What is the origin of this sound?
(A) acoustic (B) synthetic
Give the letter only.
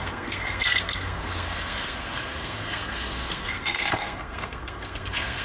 B